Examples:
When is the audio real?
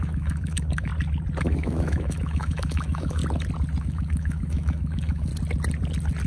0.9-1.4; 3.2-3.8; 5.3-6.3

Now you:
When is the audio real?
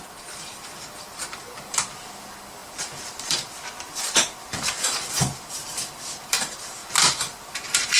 none